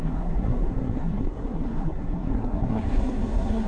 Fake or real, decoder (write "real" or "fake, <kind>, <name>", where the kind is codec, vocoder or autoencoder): fake, codec, SNAC